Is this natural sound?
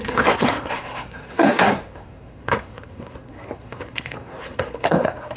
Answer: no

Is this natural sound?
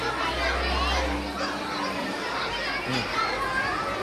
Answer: yes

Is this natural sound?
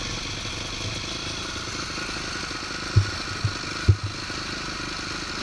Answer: yes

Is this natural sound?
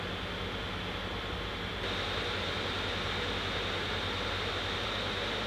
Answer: yes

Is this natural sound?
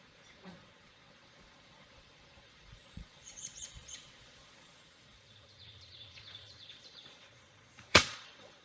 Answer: no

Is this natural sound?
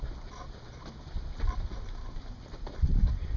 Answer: yes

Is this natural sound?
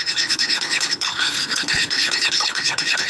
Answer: no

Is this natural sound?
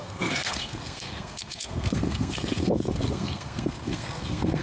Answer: no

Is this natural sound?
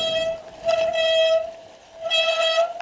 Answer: yes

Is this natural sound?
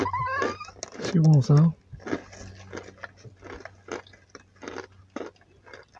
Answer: yes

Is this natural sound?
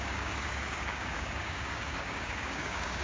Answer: no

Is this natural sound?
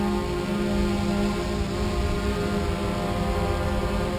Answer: yes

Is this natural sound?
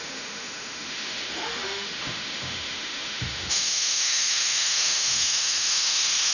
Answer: no